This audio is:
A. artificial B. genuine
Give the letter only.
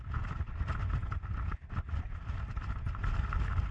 B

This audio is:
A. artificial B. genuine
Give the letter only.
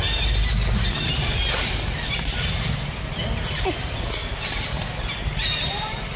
B